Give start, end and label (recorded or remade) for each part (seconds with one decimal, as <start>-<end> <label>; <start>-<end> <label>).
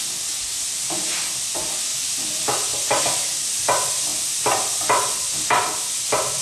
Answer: 0.0-6.4 recorded